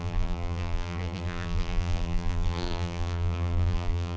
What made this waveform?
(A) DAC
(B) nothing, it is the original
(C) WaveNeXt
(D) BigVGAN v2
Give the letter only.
D